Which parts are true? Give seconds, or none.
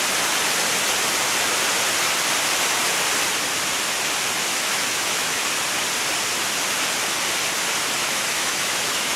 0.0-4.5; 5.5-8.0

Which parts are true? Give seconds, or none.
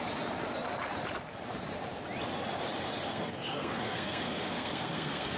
0.0-3.1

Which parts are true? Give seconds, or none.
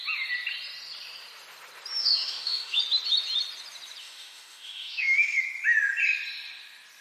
0.0-2.0; 2.8-4.0; 5.4-7.0